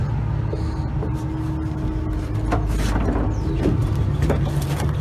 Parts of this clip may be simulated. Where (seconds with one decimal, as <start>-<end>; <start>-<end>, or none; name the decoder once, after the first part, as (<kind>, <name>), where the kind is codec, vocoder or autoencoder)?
3.8-4.4 (vocoder, BigVGAN v2)